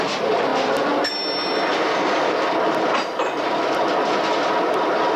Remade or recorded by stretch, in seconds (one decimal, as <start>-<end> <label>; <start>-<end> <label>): 0.0-5.2 recorded